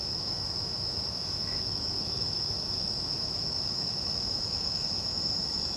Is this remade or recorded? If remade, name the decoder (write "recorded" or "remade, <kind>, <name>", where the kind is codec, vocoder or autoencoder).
remade, autoencoder, DAC-VAE